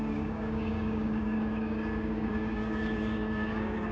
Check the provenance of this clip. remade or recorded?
remade